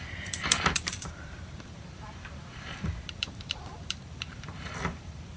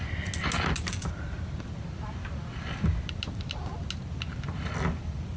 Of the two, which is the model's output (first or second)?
first